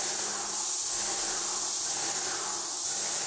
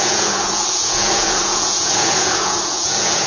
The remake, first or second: second